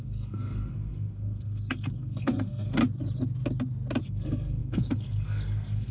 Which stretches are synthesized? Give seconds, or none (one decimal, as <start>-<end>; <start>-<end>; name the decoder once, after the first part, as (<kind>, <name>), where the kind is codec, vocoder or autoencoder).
0.0-2.8 (codec, SNAC); 4.0-5.9